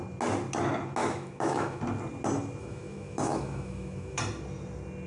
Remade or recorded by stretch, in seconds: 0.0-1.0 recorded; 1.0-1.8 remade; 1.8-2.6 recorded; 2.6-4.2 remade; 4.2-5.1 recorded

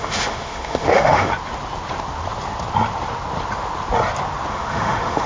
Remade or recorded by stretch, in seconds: 0.0-1.3 remade; 1.3-4.5 recorded; 4.5-5.3 remade

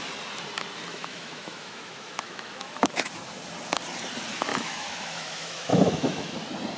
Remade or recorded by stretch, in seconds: 0.0-0.9 recorded; 0.9-3.1 remade; 3.1-4.5 recorded; 4.5-6.3 remade; 6.3-6.8 recorded